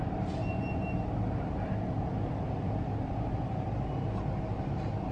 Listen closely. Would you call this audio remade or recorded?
recorded